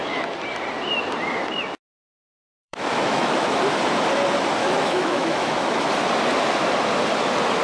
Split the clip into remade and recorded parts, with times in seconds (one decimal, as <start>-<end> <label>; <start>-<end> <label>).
0.0-2.3 recorded; 2.3-3.6 remade; 3.6-4.6 recorded; 4.6-5.9 remade; 5.9-7.6 recorded